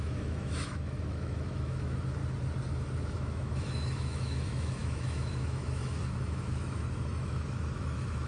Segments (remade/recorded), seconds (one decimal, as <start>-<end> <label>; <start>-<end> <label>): 0.0-2.2 remade; 2.2-3.1 recorded; 3.1-8.3 remade